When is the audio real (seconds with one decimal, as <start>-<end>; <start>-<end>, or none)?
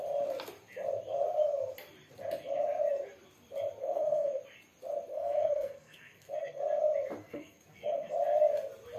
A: 0.0-3.8; 4.4-5.1; 6.6-7.2; 8.1-9.0